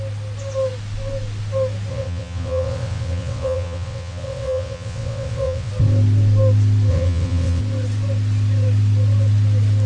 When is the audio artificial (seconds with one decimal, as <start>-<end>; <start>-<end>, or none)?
1.9-5.7; 6.9-7.6